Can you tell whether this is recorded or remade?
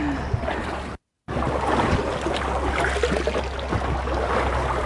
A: recorded